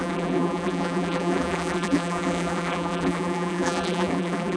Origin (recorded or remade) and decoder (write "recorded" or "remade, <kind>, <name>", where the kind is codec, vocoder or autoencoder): remade, vocoder, BigVGAN v2